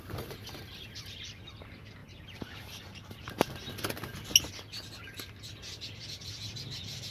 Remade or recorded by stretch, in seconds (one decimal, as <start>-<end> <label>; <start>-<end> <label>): 0.0-2.0 recorded; 2.0-3.3 remade; 3.3-7.1 recorded